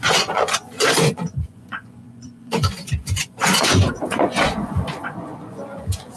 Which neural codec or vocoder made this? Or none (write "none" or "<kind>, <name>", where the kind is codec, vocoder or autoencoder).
vocoder, Vocos